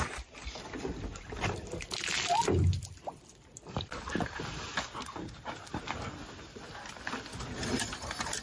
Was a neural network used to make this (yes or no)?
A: no